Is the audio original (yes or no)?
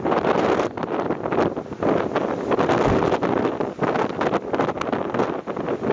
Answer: yes